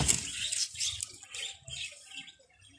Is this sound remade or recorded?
recorded